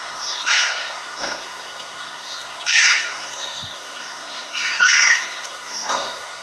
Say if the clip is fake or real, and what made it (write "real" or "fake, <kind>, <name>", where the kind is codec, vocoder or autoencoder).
fake, codec, SNAC